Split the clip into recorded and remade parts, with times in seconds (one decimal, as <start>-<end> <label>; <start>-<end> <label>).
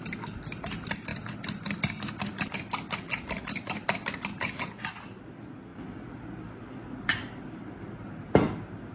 0.0-8.9 recorded